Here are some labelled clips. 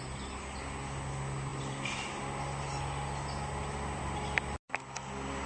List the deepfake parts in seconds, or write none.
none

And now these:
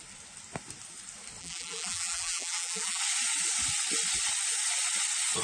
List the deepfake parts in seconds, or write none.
1.4-3.0 (vocoder, BigVGAN v2)

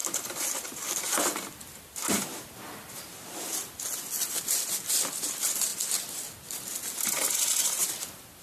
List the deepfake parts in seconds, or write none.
none

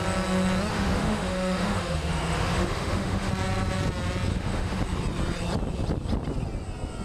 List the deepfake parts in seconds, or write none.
0.7-3.3 (autoencoder, DAC-VAE); 4.3-4.8

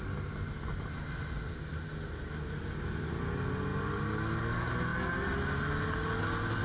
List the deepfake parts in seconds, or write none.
none

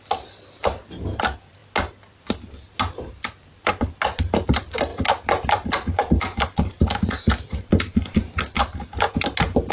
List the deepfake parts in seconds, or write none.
none